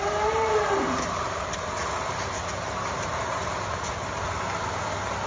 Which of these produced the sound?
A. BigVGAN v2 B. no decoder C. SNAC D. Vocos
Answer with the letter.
B